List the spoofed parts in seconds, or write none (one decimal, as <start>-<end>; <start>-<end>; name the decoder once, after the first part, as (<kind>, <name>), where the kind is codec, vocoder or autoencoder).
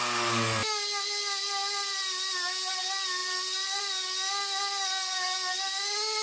3.2-3.8 (vocoder, BigVGAN v2)